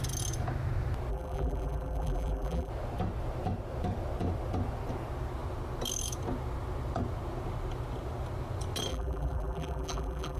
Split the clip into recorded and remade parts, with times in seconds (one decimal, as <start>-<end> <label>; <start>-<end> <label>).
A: 0.0-1.1 recorded; 1.1-2.7 remade; 2.7-8.9 recorded; 8.9-10.4 remade